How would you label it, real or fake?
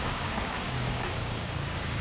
fake